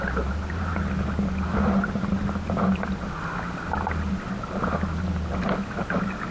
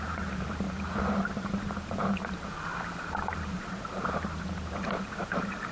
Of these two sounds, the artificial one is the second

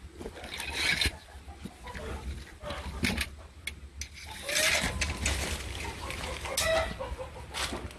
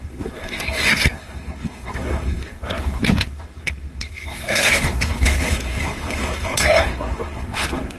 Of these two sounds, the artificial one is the second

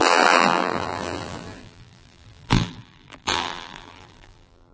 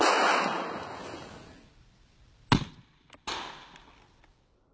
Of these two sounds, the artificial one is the first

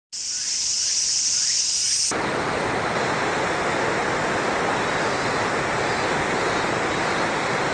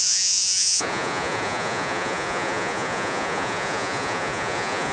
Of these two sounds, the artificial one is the second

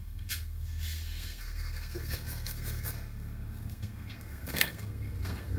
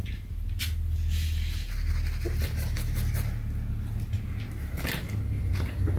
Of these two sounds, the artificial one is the first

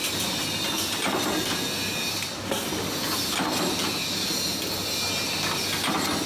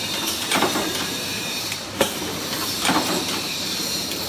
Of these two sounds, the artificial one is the second